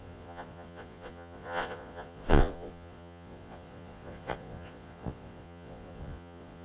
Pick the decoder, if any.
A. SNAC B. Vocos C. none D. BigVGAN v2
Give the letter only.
B